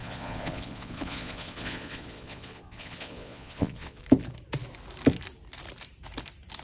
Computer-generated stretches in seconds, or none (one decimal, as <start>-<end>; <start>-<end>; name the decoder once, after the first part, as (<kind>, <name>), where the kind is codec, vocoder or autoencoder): 0.0-4.0 (vocoder, Vocos)